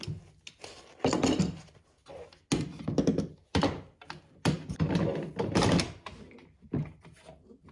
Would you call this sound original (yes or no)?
yes